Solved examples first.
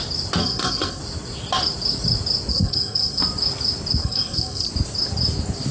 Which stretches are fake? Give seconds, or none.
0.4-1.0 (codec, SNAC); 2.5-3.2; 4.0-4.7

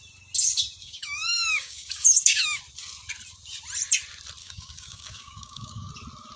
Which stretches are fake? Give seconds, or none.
0.8-2.6 (codec, DAC); 4.4-5.9

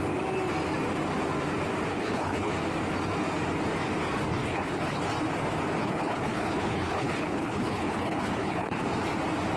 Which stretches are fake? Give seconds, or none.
1.9-2.5 (codec, HILCodec); 4.3-5.0; 5.8-8.8

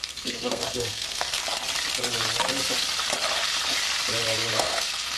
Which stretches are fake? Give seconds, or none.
0.0-1.4 (codec, SNAC); 4.5-5.2

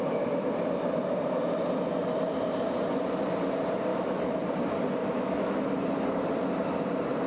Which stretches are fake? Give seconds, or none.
3.9-4.4 (autoencoder, DAC-VAE); 5.0-5.6

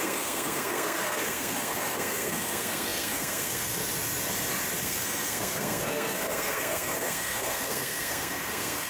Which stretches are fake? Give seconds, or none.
0.0-3.8 (codec, SNAC); 4.8-8.9